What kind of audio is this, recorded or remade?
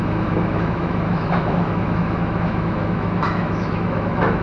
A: remade